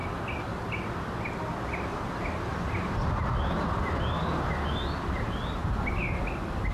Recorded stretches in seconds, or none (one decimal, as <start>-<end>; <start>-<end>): 0.0-6.7

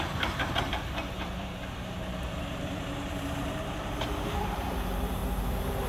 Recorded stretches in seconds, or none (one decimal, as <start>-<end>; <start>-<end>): 5.2-5.9

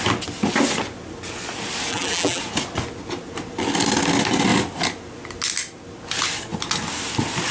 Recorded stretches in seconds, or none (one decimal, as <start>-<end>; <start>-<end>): 0.0-1.9; 2.4-7.5

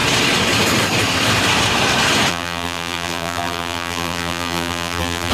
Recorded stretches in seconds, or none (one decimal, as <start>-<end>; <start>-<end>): 0.0-2.3

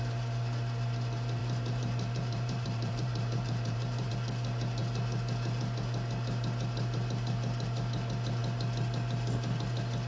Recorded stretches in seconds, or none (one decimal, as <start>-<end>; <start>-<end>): 0.0-1.4; 4.1-10.1

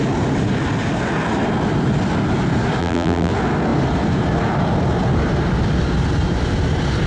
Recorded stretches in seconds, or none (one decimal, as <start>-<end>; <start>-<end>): 0.0-2.8; 3.3-7.1

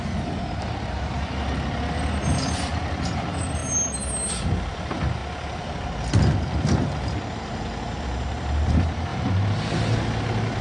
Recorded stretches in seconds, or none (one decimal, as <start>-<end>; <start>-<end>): 3.6-4.3; 5.2-8.0; 9.1-10.2

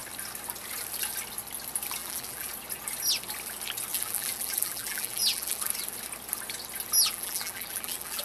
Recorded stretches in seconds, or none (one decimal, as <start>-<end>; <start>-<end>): 0.0-2.0; 2.5-3.9; 5.6-7.0